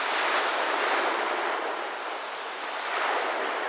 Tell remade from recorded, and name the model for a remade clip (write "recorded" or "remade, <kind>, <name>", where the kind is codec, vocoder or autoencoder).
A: recorded